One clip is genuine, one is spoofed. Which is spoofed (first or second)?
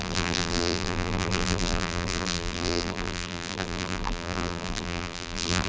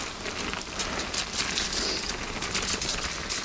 first